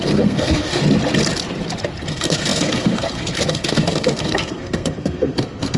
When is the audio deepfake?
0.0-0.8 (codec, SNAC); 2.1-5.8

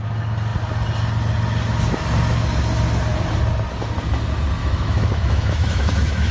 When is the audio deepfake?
4.6-6.3 (autoencoder, DAC-VAE)

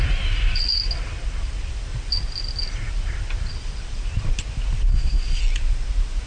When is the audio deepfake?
4.9-5.4 (codec, SNAC)